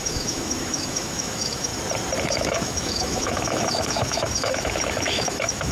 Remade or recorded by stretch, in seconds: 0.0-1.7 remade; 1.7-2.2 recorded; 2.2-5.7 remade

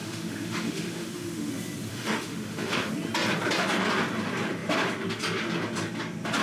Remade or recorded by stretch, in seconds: 0.0-1.5 remade; 1.5-1.9 recorded; 1.9-2.9 remade; 2.9-6.4 recorded

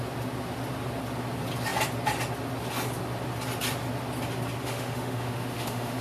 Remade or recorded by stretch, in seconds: 0.0-4.6 recorded; 4.6-6.0 remade

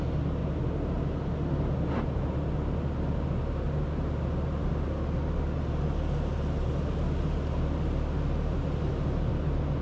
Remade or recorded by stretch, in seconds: 0.0-9.8 recorded

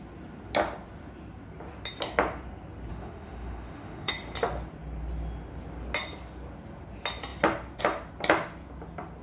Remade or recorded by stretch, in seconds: 0.0-2.9 recorded; 2.9-4.1 remade; 4.1-9.2 recorded

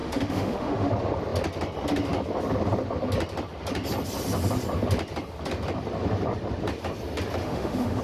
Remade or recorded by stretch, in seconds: 0.0-0.9 remade; 0.9-7.4 recorded; 7.4-8.0 remade